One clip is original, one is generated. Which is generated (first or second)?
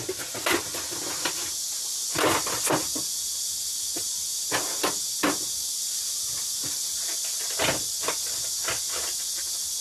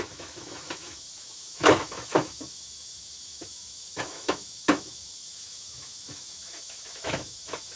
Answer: second